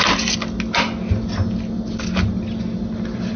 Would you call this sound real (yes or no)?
yes